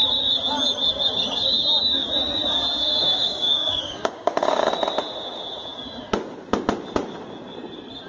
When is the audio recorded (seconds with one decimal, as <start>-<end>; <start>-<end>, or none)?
0.0-2.8; 4.7-8.1